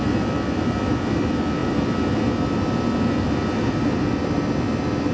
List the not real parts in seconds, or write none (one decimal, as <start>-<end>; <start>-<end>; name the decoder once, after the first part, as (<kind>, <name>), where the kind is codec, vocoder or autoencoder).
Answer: none